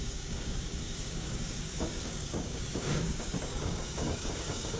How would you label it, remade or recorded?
remade